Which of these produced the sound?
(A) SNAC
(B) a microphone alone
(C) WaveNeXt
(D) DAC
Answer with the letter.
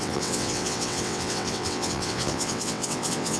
C